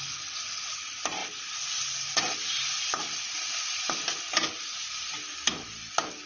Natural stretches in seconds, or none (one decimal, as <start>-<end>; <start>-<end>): 0.0-6.3